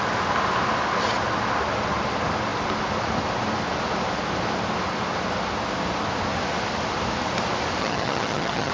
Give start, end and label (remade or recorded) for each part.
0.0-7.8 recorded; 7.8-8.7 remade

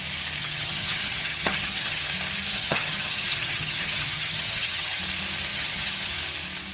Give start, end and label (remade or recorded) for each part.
0.0-0.4 recorded; 0.4-2.0 remade; 2.0-2.5 recorded; 2.5-5.0 remade; 5.0-5.5 recorded; 5.5-6.1 remade; 6.1-6.7 recorded

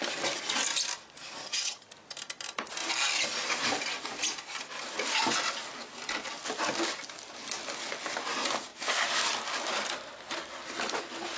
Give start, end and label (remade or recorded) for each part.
0.0-1.4 recorded; 1.4-1.9 remade; 1.9-11.4 recorded

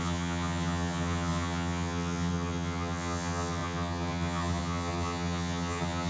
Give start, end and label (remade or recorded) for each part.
0.0-6.1 remade

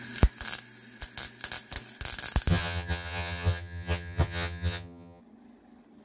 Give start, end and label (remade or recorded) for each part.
0.0-2.5 recorded; 2.5-5.2 remade; 5.2-6.0 recorded

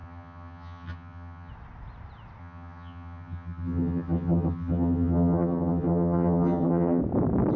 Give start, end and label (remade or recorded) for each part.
0.0-1.5 remade; 1.5-2.4 recorded; 2.4-7.0 remade; 7.0-7.6 recorded

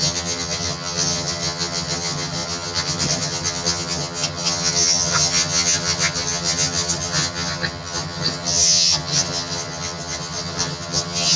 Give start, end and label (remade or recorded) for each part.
0.0-11.4 remade